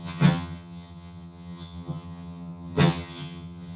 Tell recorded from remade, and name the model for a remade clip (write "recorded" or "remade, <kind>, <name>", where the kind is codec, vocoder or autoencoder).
remade, vocoder, HiFi-GAN